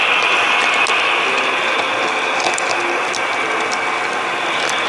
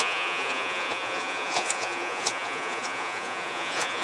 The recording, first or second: first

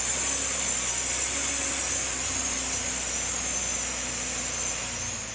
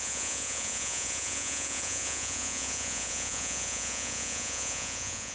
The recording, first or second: first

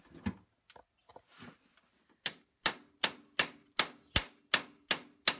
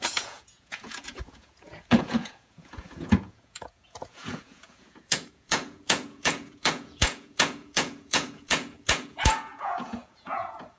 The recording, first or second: first